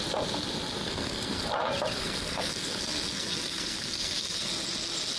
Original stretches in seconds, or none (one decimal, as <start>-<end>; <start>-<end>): 0.0-0.8; 1.4-2.0; 4.5-5.2